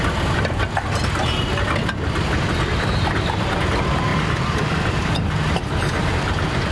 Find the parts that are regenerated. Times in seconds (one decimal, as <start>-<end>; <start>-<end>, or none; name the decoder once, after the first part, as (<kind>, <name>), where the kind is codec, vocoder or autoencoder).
4.1-5.4 (vocoder, BigVGAN v2)